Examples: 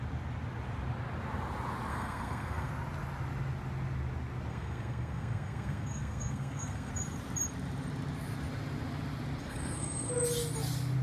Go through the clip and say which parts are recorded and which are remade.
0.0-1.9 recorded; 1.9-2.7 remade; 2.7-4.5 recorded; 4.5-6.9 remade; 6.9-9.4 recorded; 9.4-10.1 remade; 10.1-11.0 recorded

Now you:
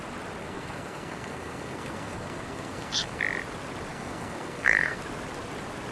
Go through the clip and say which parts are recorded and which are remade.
0.0-0.4 recorded; 0.4-3.2 remade; 3.2-3.9 recorded; 3.9-5.0 remade; 5.0-5.9 recorded

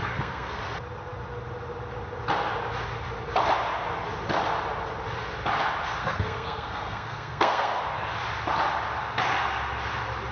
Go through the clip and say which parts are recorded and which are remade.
0.0-0.6 remade; 0.6-6.0 recorded; 6.0-7.8 remade; 7.8-10.3 recorded

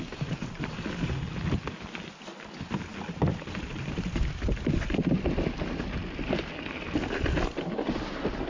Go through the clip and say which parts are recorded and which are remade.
0.0-8.5 recorded